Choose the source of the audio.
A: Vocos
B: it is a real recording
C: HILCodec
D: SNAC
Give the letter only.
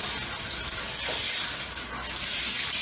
B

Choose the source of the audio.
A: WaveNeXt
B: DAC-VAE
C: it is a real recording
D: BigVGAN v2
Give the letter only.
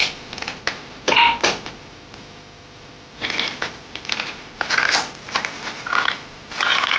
D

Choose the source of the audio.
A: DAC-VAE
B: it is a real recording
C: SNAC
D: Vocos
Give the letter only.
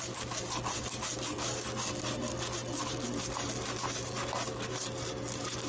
B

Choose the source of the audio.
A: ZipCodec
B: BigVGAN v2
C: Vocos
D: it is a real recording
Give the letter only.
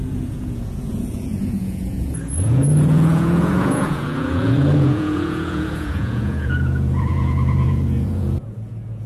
C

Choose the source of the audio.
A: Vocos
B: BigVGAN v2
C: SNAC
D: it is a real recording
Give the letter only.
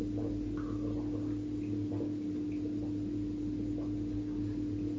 D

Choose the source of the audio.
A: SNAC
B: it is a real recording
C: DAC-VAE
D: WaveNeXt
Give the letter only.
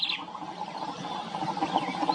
B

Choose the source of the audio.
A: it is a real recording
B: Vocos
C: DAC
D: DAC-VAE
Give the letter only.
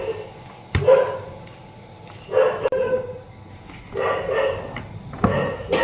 A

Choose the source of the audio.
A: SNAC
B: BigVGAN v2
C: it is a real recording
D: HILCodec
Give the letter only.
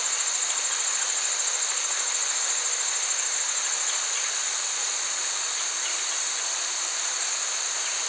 C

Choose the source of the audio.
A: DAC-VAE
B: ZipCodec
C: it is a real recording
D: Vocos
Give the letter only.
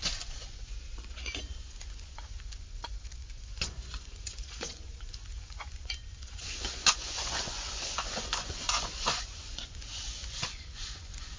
D